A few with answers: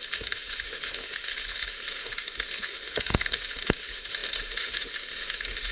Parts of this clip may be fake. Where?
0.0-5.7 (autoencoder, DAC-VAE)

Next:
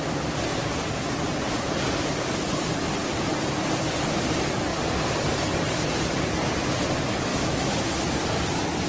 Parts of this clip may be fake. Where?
7.3-7.8 (autoencoder, DAC-VAE)

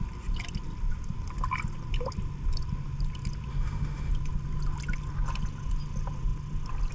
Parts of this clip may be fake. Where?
3.5-4.1 (autoencoder, DAC-VAE)

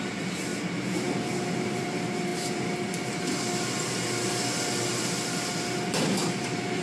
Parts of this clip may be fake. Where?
none

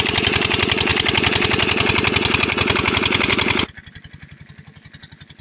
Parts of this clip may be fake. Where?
none

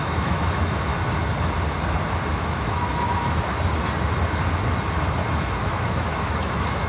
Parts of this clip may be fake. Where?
0.0-0.9 (autoencoder, DAC-VAE); 2.3-2.9; 5.6-6.9